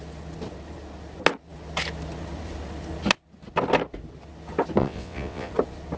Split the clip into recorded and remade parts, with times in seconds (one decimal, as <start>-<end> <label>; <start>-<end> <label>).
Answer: 0.0-4.8 recorded; 4.8-5.5 remade; 5.5-6.0 recorded